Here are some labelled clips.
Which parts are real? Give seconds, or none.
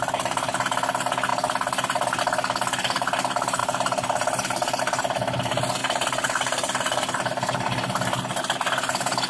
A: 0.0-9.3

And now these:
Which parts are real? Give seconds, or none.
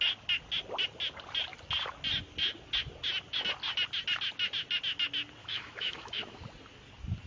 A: 0.0-5.4; 6.4-7.3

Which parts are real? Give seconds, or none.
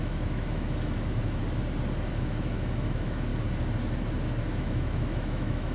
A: 1.4-2.1; 3.3-4.5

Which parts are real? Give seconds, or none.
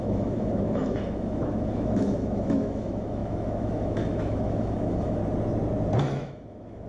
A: 5.2-6.0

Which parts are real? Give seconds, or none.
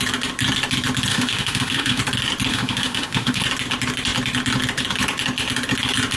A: 0.0-1.1; 2.0-2.5; 3.4-6.2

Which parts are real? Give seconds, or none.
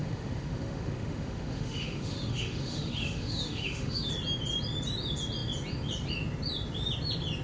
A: 4.1-7.4